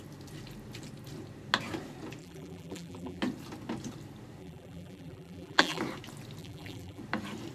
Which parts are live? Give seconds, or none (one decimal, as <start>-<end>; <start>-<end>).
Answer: 0.0-2.2; 3.2-4.4; 5.8-6.4; 7.0-7.5